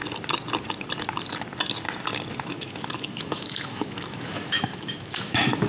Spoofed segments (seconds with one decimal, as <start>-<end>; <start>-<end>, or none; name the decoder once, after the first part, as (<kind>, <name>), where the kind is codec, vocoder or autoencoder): 2.3-5.7 (autoencoder, DAC-VAE)